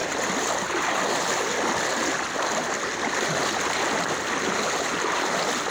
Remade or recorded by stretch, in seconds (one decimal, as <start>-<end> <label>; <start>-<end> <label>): 0.0-5.7 recorded